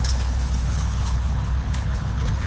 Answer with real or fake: fake